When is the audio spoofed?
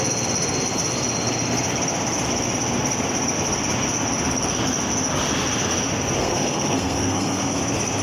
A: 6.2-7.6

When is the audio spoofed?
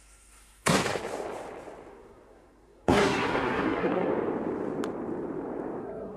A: 0.0-0.8; 1.9-4.1; 5.8-6.2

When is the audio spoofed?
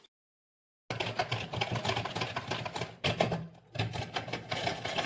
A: none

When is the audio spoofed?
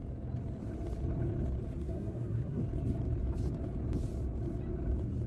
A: 1.8-2.6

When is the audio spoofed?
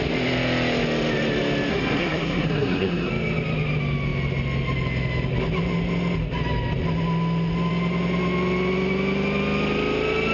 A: 1.7-3.1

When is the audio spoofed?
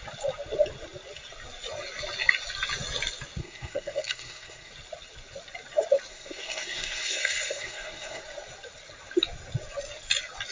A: 3.4-4.7; 6.1-8.2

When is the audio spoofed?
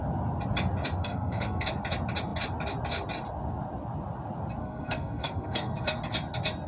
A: 1.0-1.7; 4.6-6.0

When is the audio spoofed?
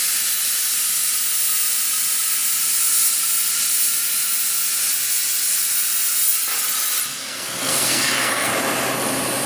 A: 7.1-8.5